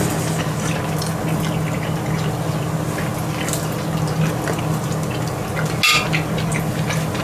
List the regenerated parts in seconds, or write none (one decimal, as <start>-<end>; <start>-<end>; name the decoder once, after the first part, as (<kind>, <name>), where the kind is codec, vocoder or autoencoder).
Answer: none